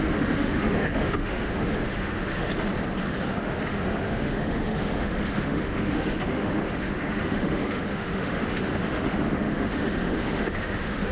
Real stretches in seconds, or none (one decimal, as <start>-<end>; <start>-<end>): 2.5-3.0